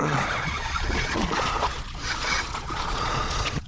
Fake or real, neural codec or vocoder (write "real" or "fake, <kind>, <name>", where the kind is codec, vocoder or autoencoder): fake, vocoder, Vocos